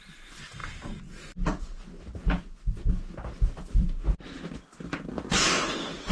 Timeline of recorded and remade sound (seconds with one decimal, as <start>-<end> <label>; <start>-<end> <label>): 0.0-6.1 recorded